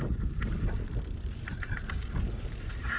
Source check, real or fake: real